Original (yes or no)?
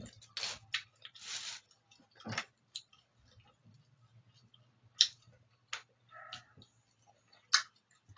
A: yes